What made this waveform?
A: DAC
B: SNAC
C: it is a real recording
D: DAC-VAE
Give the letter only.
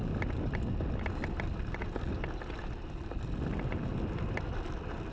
C